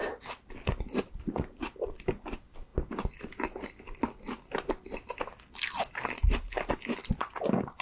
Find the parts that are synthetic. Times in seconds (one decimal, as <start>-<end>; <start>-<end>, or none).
0.0-0.5